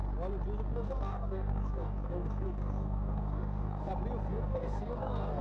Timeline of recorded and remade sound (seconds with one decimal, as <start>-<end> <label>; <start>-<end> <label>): 0.0-0.7 recorded; 0.7-3.9 remade; 3.9-4.3 recorded; 4.3-5.4 remade